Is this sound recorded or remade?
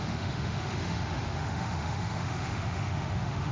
remade